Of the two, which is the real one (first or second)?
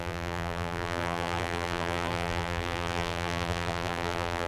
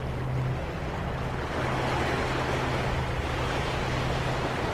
second